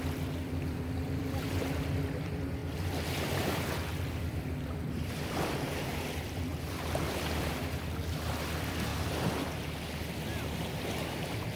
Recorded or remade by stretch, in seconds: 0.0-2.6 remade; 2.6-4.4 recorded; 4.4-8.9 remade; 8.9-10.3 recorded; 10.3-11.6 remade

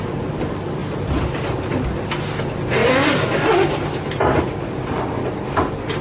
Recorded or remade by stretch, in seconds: 0.0-6.0 recorded